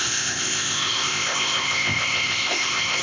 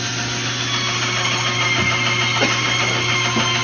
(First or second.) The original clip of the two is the second